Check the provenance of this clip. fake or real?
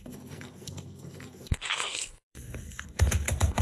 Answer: fake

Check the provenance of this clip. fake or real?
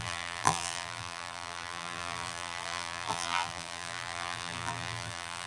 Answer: fake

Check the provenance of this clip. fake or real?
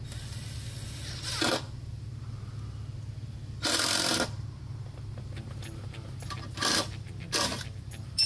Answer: real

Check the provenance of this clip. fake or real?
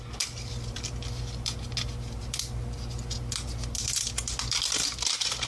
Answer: real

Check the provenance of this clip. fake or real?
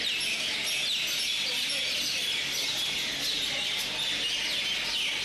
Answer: real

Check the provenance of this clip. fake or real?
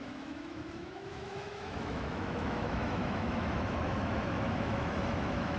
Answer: fake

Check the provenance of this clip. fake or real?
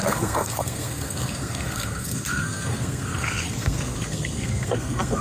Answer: fake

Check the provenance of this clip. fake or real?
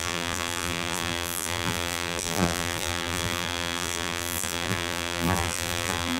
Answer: fake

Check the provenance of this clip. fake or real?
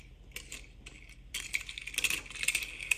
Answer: real